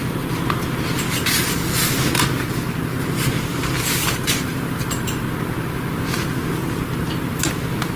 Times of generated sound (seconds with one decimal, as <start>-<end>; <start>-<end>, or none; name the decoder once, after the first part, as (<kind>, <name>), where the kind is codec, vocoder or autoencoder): 3.5-5.2 (vocoder, BigVGAN v2)